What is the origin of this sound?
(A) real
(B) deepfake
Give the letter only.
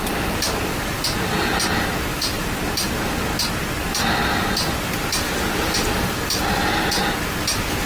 A